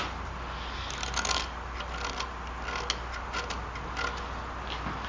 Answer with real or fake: real